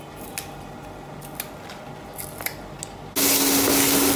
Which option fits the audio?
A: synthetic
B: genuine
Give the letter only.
B